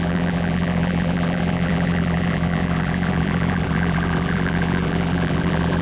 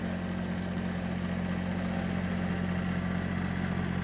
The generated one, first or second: first